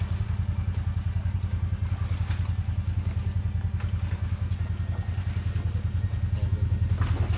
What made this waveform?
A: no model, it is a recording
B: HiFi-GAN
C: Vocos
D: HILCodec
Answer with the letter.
A